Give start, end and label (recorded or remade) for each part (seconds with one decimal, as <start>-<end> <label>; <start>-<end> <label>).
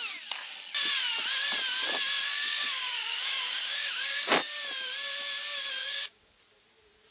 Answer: 0.0-2.3 recorded; 2.3-4.3 remade; 4.3-5.8 recorded; 5.8-6.4 remade; 6.4-7.1 recorded